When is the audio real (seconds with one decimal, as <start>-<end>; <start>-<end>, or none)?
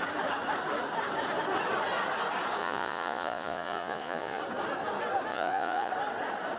0.0-2.6; 4.4-5.3; 5.9-6.6